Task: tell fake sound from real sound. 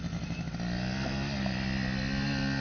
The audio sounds real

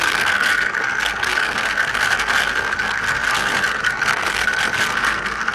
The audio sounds fake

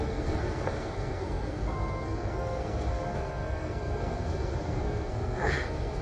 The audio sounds fake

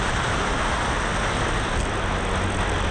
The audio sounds real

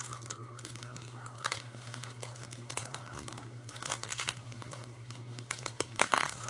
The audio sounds fake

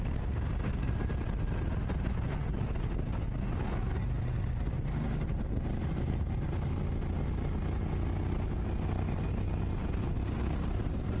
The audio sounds real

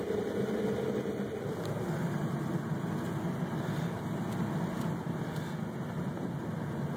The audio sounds real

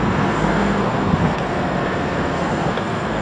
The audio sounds fake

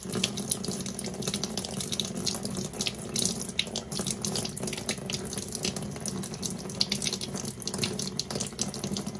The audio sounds real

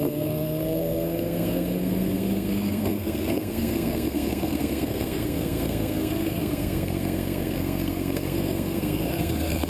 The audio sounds fake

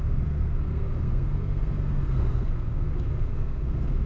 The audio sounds fake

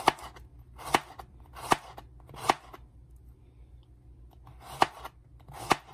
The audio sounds real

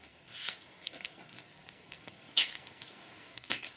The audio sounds fake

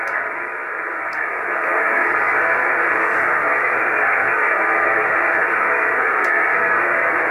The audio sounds fake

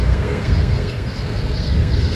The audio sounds fake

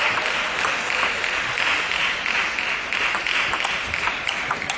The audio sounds real